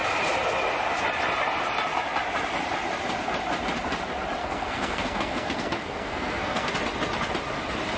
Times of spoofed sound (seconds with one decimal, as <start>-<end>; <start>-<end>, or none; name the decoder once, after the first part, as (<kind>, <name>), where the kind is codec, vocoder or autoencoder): 4.4-6.7 (codec, SNAC)